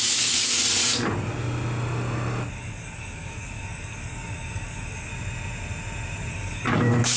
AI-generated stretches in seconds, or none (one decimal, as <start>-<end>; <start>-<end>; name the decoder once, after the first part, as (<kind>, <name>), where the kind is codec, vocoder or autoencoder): 0.0-0.6 (codec, DAC); 2.5-5.1; 6.3-7.2